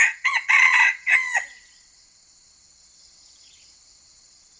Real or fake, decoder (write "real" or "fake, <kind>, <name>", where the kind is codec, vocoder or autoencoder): fake, vocoder, WaveNeXt